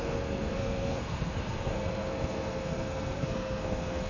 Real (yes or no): no